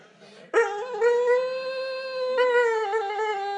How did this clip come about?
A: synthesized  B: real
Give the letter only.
B